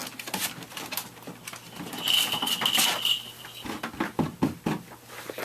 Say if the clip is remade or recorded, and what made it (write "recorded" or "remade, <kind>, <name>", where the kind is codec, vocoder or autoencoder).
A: recorded